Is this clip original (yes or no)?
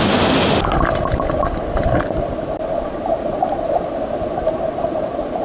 yes